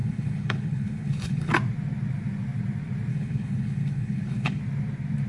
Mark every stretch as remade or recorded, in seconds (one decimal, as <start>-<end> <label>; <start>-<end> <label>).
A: 0.0-1.5 remade; 1.5-3.1 recorded; 3.1-4.6 remade; 4.6-5.3 recorded